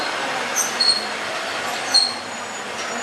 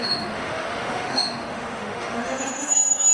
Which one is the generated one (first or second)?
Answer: second